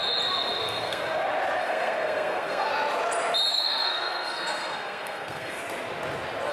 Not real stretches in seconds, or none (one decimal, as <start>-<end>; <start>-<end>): 0.6-1.0; 1.6-2.7; 3.5-5.6